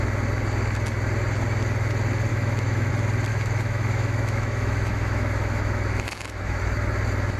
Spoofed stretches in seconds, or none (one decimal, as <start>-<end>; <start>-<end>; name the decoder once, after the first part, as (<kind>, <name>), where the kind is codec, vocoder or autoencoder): 2.3-2.9 (autoencoder, DAC-VAE); 3.3-6.6